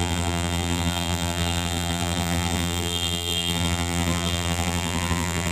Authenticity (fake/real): fake